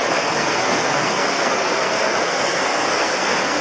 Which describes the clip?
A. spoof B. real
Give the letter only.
A